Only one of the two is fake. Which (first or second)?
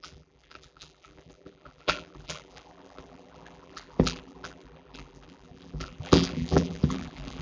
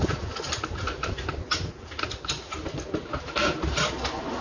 first